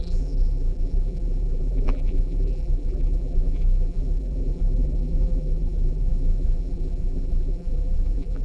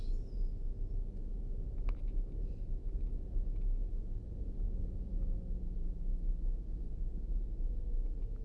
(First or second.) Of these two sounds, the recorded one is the second